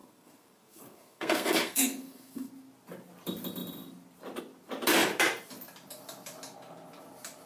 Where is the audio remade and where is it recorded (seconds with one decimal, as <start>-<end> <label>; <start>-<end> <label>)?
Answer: 0.0-2.5 remade; 2.5-7.5 recorded